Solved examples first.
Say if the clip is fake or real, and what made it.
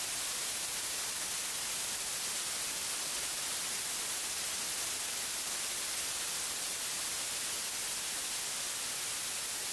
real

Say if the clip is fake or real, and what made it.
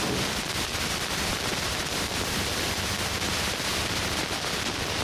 real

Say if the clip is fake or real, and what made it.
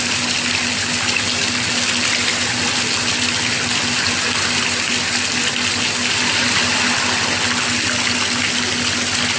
real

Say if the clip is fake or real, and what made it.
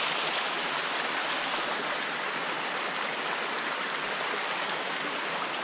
real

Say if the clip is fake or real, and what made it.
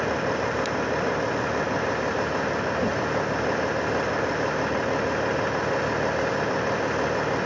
real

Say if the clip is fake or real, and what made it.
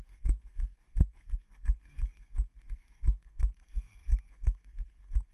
fake, codec, SNAC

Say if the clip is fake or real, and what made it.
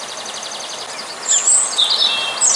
real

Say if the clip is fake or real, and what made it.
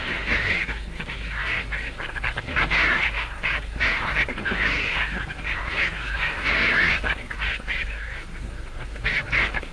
fake, codec, SNAC